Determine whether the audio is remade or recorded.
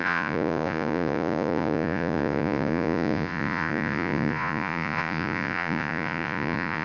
remade